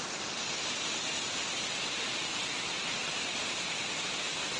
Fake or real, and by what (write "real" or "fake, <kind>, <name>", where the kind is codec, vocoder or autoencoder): real